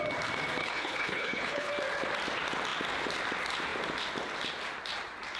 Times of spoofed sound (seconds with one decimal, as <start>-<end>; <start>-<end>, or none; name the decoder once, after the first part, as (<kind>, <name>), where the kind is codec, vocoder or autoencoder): 0.6-1.7 (codec, HILCodec)

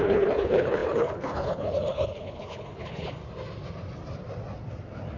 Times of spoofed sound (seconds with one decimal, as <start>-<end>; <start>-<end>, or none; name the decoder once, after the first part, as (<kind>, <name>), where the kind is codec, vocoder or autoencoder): 0.0-3.2 (codec, HILCodec)

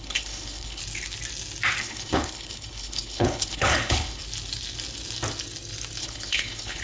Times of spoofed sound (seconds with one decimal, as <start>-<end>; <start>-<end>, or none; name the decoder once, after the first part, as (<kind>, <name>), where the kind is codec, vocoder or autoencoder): 0.0-0.8 (codec, HILCodec); 1.8-4.2; 6.0-6.8

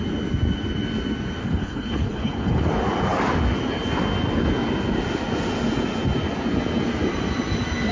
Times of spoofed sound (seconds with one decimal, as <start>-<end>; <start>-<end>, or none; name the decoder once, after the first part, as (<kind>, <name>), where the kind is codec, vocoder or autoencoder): 1.4-2.7 (codec, HILCodec)

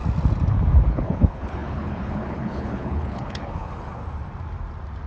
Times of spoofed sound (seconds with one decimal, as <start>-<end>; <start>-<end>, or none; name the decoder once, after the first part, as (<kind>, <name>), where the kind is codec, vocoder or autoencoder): 0.9-4.0 (codec, HILCodec)

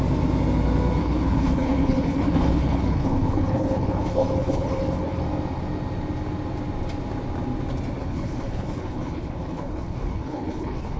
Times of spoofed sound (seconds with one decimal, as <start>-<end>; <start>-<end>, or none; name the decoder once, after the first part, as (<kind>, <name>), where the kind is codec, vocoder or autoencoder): 1.0-5.2 (codec, HILCodec); 8.0-11.0